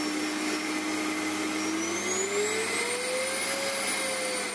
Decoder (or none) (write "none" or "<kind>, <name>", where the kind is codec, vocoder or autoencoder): none